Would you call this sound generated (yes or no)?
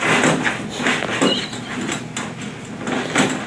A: no